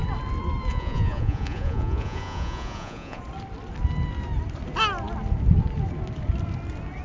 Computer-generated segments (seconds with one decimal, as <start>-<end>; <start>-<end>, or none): 0.7-3.2